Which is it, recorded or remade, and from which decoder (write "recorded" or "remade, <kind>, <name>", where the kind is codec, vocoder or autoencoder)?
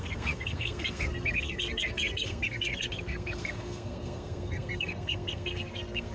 remade, codec, SNAC